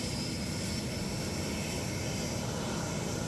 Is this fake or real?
real